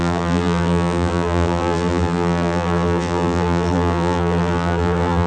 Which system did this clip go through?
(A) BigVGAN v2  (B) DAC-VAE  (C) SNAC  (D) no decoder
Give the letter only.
A